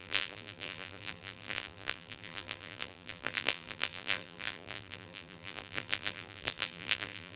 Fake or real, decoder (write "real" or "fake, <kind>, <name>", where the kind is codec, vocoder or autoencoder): fake, vocoder, BigVGAN v2